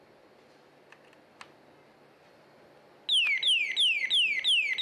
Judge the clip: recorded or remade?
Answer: recorded